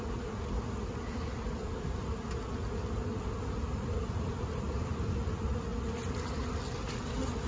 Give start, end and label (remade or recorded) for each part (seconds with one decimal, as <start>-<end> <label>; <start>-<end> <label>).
0.0-7.5 recorded